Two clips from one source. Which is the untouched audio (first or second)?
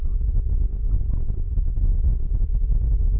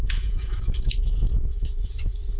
first